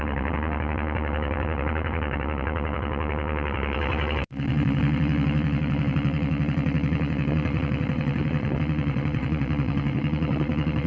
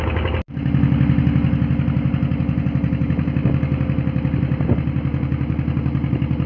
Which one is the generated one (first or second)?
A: first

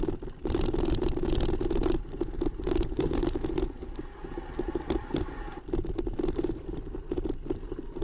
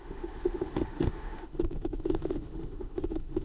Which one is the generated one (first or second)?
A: second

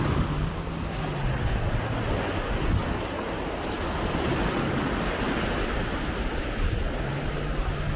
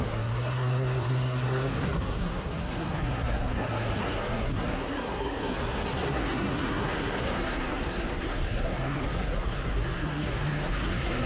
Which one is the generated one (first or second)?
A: second